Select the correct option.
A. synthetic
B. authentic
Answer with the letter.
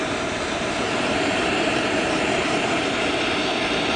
A